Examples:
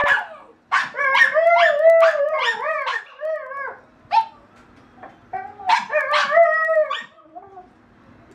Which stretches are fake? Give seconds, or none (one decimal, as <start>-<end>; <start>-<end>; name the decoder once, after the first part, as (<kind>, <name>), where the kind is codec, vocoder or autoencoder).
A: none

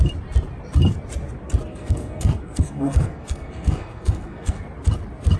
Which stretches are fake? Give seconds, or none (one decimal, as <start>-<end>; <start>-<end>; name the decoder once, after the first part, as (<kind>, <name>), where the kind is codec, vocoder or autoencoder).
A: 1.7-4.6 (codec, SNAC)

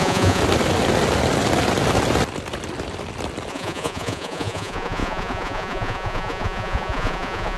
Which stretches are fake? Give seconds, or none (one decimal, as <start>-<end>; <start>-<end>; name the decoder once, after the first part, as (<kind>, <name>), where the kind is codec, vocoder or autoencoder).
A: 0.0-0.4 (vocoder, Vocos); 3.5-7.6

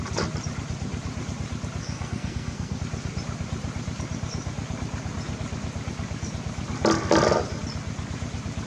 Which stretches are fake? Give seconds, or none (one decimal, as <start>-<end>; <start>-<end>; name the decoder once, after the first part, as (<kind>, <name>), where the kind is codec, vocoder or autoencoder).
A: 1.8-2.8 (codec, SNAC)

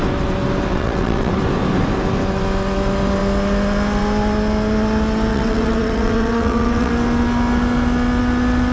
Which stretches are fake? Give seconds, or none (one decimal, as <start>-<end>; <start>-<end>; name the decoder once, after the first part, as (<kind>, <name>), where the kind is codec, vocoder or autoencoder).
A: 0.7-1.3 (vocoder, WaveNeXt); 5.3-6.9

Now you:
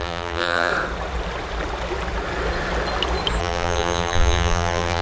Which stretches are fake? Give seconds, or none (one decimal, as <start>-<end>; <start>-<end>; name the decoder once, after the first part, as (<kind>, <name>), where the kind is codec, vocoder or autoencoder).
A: 0.0-0.7 (vocoder, BigVGAN v2); 3.4-5.0

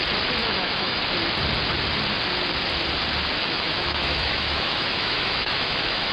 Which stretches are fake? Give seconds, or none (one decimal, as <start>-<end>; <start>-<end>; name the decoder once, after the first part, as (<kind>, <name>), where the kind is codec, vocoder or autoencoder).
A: 0.4-1.0 (autoencoder, DAC-VAE); 3.4-6.1